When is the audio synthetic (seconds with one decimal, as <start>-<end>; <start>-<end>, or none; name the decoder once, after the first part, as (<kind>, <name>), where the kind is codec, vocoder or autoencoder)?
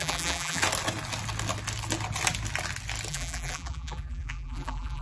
0.0-0.6 (vocoder, BigVGAN v2); 3.1-5.0